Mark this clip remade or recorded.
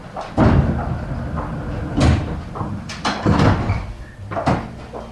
recorded